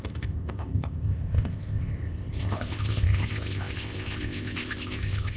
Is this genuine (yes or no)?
no